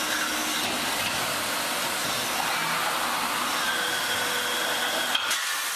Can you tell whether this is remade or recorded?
recorded